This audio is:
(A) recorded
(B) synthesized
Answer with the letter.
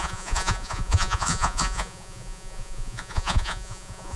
B